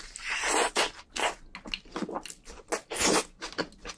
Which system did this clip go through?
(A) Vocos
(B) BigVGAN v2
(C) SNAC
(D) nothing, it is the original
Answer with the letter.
D